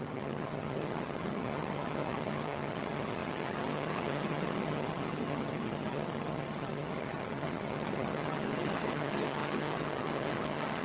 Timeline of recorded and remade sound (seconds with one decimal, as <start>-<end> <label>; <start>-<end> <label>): 0.0-10.8 remade